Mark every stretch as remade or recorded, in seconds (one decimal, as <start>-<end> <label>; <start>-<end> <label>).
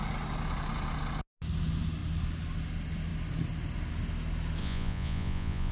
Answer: 0.0-4.6 recorded; 4.6-5.7 remade